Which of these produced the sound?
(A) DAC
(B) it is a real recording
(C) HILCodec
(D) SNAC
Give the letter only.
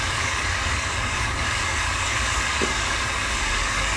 A